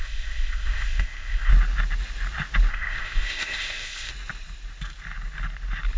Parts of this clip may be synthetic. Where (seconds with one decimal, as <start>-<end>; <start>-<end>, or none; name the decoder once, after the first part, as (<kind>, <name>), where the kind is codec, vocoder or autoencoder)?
0.0-1.5 (codec, ZipCodec); 2.7-4.1